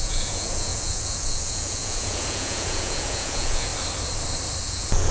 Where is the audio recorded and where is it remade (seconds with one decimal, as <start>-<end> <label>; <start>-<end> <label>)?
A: 0.0-3.7 remade; 3.7-4.6 recorded; 4.6-5.1 remade